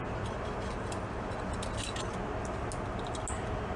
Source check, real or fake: real